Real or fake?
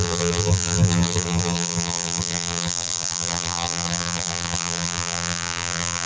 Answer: fake